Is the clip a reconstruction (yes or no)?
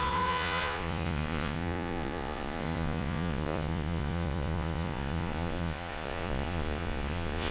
yes